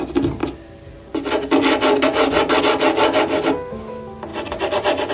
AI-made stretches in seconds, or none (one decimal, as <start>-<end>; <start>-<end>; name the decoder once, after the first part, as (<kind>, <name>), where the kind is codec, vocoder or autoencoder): 0.4-2.6 (vocoder, BigVGAN v2); 4.3-5.1